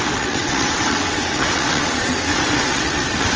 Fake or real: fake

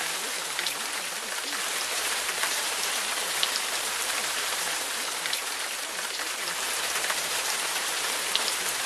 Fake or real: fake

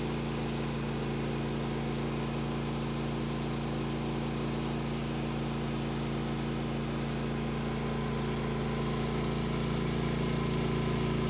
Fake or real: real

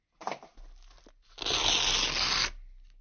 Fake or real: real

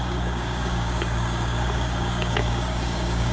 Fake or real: fake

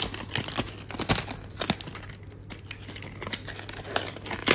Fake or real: real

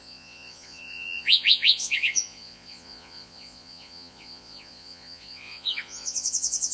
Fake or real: fake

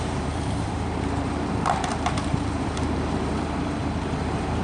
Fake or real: fake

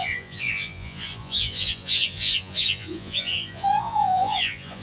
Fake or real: fake